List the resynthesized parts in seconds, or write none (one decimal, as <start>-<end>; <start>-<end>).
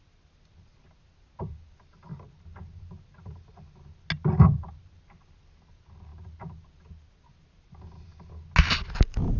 none